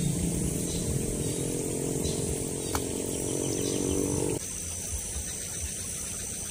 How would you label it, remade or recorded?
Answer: remade